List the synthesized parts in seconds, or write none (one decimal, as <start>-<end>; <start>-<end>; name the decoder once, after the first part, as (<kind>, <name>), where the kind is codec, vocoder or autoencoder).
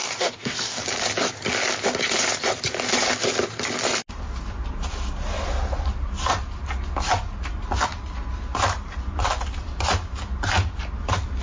0.0-0.8 (codec, DAC)